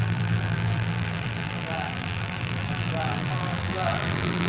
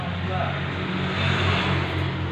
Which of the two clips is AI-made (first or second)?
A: first